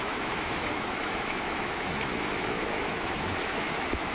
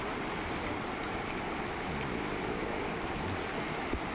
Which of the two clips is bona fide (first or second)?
second